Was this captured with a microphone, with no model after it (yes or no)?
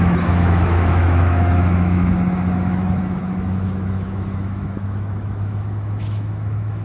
no